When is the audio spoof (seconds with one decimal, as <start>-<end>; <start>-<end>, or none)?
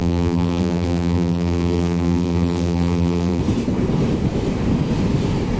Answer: 0.0-3.4